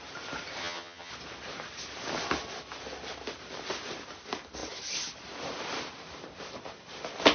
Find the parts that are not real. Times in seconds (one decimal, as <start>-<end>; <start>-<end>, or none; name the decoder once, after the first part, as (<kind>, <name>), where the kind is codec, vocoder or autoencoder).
0.6-1.1 (vocoder, HiFi-GAN)